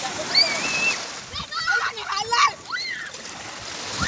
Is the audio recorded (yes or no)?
yes